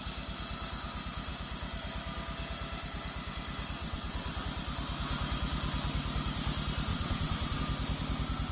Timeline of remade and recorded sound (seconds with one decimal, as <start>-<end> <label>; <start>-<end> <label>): 0.0-3.8 recorded; 3.8-4.4 remade; 4.4-6.9 recorded; 6.9-7.6 remade; 7.6-8.5 recorded